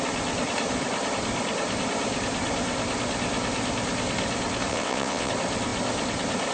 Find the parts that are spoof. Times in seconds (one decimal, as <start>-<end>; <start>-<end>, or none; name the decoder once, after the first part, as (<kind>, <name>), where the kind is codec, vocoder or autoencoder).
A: 4.7-5.3 (vocoder, WaveNeXt)